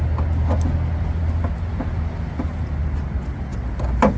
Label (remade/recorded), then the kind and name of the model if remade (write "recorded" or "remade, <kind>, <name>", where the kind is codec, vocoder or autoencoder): recorded